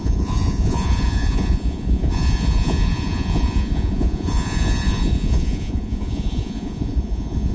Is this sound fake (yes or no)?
yes